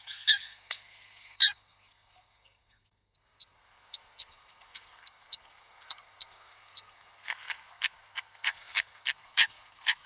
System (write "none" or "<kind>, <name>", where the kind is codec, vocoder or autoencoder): codec, SNAC